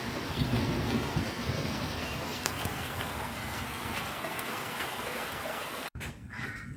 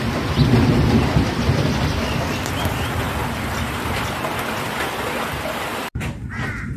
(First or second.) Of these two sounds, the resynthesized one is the first